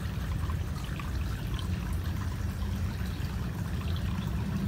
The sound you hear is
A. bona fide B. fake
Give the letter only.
A